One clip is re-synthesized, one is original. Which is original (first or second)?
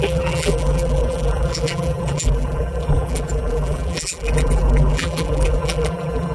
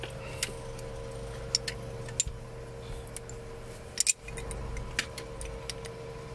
second